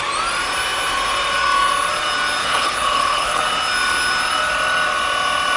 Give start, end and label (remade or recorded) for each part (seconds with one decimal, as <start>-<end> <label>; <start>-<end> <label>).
0.0-2.4 recorded; 2.4-3.4 remade; 3.4-5.6 recorded